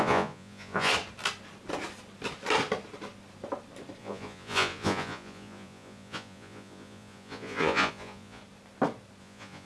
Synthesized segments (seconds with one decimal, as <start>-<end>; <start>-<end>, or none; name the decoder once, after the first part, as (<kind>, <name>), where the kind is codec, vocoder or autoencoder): 0.0-0.9 (vocoder, Vocos); 4.0-8.4; 9.2-9.7